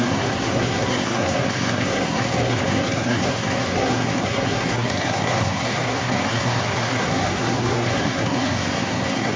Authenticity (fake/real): fake